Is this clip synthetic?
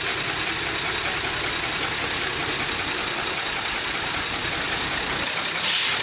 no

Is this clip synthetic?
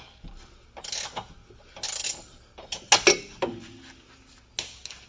no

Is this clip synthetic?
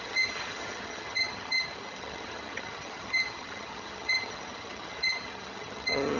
yes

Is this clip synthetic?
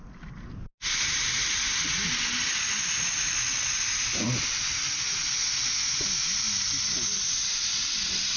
no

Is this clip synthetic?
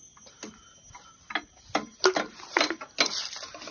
no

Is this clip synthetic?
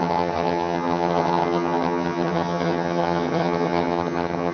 yes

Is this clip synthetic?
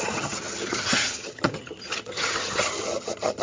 yes